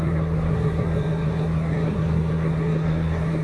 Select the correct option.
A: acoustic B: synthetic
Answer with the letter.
B